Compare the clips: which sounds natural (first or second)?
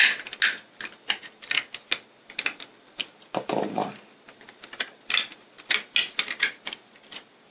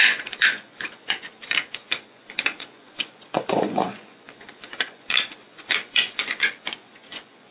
first